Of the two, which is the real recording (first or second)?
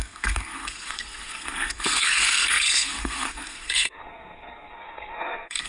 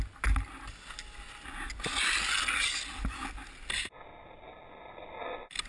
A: second